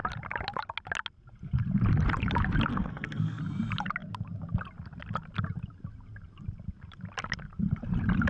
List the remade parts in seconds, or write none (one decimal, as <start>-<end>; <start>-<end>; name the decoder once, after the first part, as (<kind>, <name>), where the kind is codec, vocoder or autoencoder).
2.7-3.4 (codec, SNAC)